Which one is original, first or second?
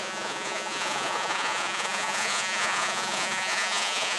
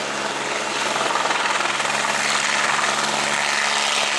second